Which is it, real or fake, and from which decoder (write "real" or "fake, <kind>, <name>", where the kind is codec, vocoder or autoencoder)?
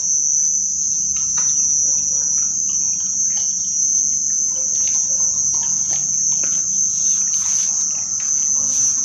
real